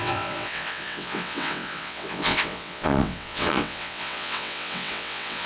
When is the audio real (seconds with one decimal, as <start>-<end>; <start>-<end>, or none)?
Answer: none